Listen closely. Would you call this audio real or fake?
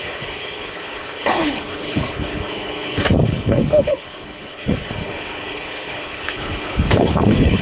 fake